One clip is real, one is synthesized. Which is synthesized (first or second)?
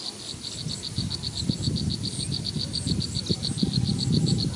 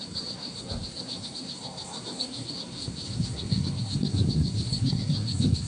second